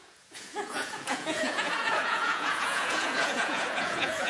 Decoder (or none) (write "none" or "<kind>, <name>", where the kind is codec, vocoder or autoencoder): vocoder, Vocos